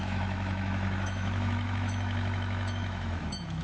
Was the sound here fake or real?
fake